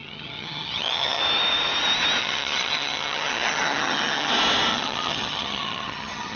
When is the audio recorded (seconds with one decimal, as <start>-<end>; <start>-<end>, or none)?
1.2-2.2; 4.3-4.7